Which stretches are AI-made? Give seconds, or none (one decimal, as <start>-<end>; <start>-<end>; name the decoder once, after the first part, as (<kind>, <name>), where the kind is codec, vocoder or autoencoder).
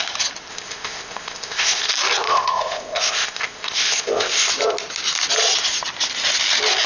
0.5-1.9 (codec, ZipCodec); 2.3-4.5